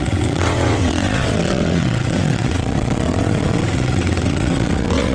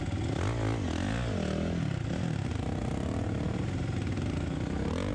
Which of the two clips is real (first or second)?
second